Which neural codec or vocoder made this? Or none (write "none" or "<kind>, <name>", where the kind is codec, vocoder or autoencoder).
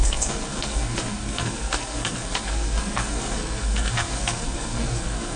codec, SNAC